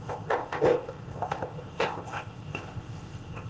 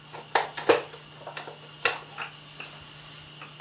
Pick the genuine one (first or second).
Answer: second